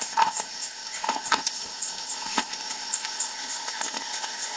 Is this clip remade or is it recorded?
remade